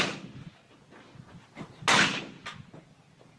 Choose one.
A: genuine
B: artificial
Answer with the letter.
A